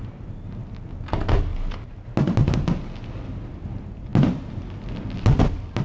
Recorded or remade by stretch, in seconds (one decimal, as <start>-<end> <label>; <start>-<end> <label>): 0.0-5.8 recorded